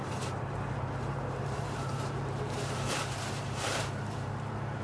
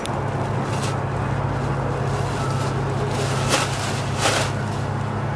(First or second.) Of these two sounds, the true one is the second